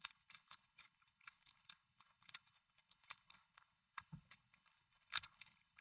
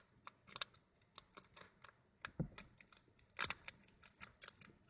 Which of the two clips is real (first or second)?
second